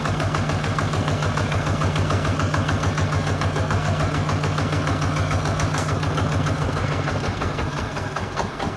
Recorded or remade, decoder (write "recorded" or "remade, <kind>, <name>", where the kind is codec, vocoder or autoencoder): remade, codec, SNAC